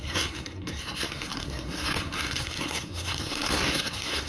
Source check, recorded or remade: remade